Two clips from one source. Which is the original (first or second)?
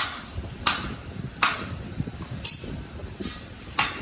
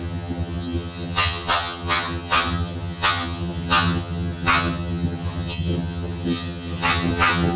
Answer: first